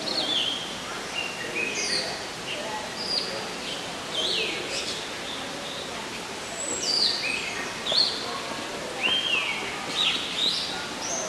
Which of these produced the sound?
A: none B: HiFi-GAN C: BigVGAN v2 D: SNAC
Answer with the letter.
A